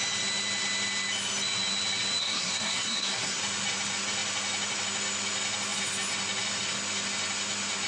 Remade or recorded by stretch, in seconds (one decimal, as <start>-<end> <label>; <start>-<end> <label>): 0.0-2.2 recorded; 2.2-3.4 remade; 3.4-7.9 recorded